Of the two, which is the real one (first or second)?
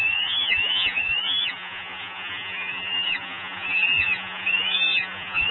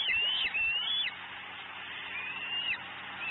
second